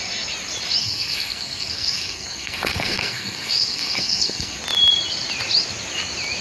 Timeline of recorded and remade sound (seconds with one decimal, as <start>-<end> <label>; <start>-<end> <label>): 0.0-0.8 recorded; 0.8-4.6 remade; 4.6-6.4 recorded